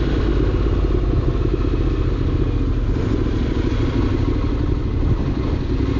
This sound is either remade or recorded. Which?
recorded